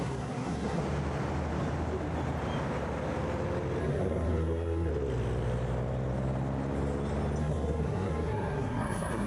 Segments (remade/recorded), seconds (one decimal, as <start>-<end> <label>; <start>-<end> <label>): 0.0-0.8 remade; 0.8-3.8 recorded; 3.8-4.9 remade; 4.9-7.4 recorded; 7.4-9.3 remade